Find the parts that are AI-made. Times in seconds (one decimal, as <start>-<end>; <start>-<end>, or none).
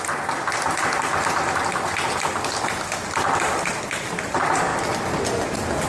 none